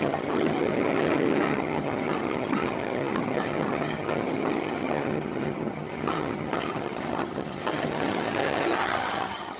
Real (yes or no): no